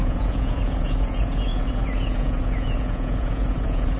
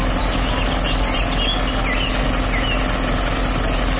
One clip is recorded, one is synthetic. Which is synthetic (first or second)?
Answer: first